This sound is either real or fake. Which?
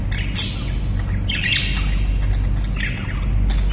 real